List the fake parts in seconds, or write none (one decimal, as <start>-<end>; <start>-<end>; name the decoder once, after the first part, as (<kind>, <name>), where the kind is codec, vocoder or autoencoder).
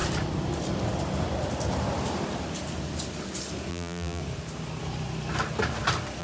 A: 3.7-4.2 (vocoder, BigVGAN v2)